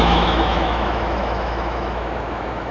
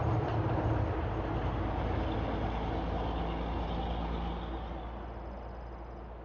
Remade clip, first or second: first